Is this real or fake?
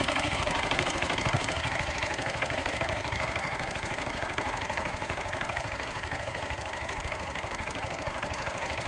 fake